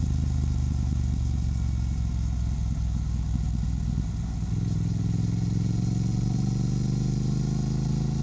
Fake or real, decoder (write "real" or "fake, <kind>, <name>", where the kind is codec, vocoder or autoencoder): real